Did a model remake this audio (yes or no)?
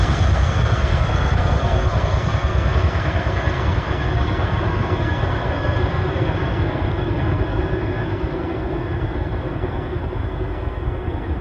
yes